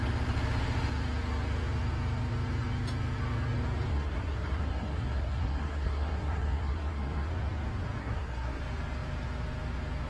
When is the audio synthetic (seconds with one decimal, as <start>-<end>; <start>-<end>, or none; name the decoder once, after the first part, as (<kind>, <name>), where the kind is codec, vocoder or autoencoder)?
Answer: 3.9-7.3 (codec, SNAC); 8.0-8.6